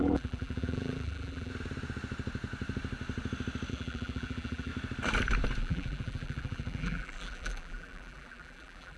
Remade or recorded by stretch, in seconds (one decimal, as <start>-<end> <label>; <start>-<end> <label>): 0.0-1.5 remade; 1.5-3.7 recorded; 3.7-4.7 remade; 4.7-5.6 recorded; 5.6-9.0 remade